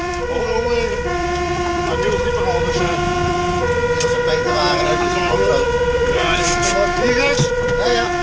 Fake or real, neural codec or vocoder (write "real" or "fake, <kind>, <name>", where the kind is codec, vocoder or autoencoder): fake, vocoder, BigVGAN v2